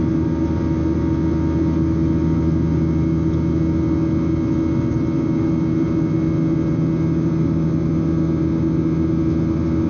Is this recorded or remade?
recorded